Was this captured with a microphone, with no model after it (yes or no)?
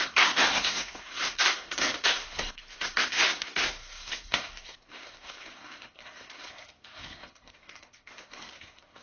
no